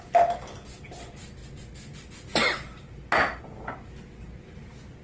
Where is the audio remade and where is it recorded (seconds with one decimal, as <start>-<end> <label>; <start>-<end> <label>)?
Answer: 0.0-5.0 recorded